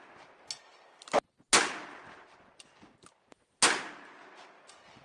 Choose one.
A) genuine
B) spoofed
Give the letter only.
A